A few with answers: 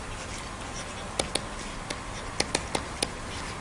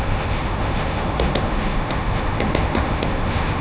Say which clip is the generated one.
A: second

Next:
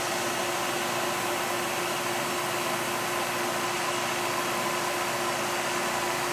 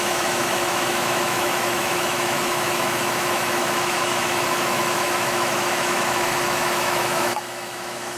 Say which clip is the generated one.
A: second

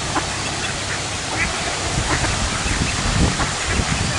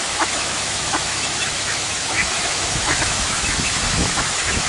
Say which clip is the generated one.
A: second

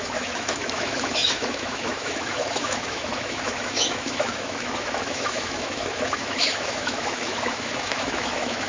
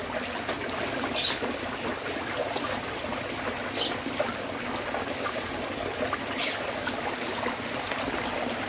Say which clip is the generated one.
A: first